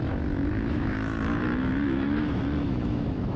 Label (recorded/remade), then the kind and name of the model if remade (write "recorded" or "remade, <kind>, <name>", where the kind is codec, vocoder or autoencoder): remade, autoencoder, DAC-VAE